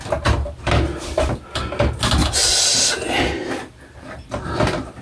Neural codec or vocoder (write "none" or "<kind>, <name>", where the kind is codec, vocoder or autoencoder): none